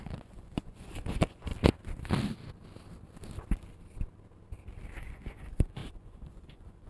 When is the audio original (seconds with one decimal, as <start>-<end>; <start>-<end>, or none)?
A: 1.5-5.0